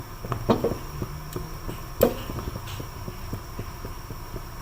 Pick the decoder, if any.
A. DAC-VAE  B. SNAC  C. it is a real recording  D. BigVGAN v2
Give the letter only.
C